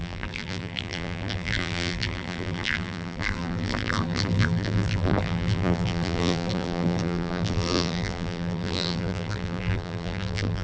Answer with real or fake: fake